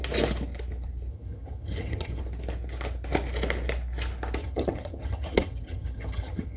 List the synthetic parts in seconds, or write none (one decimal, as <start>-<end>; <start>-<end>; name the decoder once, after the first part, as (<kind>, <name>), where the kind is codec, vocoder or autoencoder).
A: 1.1-2.2 (vocoder, HiFi-GAN); 4.4-6.6